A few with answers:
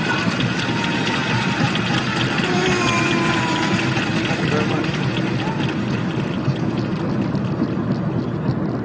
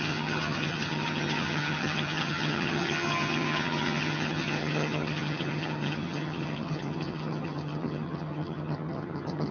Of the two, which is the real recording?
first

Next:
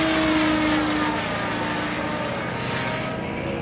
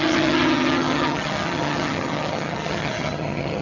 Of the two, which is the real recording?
first